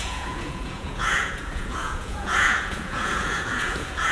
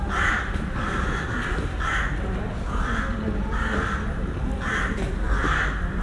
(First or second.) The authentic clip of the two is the second